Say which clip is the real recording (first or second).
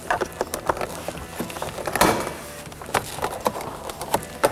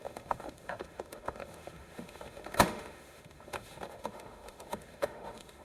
first